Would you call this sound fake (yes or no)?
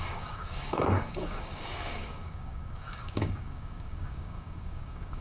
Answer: yes